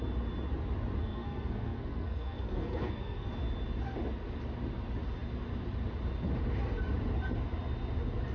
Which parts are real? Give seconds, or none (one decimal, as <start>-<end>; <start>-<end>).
0.0-1.0; 3.3-8.3